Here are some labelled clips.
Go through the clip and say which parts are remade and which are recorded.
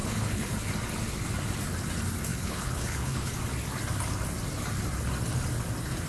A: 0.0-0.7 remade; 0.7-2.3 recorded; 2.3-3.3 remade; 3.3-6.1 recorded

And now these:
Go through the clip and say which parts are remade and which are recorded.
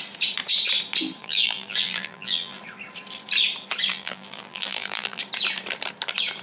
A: 0.0-1.2 recorded; 1.2-2.6 remade; 2.6-3.9 recorded; 3.9-5.2 remade; 5.2-6.4 recorded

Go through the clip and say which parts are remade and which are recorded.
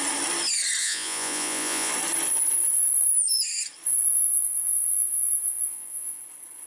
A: 0.0-0.8 recorded; 0.8-1.9 remade; 1.9-4.1 recorded; 4.1-6.2 remade; 6.2-6.7 recorded